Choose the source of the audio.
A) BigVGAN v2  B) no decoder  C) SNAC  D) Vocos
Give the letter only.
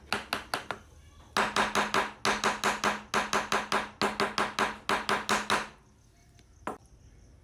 B